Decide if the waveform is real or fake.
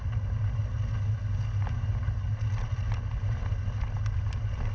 real